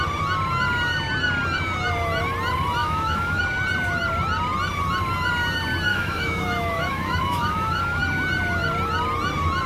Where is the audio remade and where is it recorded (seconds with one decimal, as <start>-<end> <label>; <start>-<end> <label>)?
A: 0.0-2.8 recorded; 2.8-3.4 remade; 3.4-5.9 recorded; 5.9-8.0 remade; 8.0-9.7 recorded